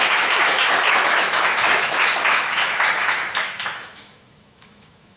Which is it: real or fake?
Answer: fake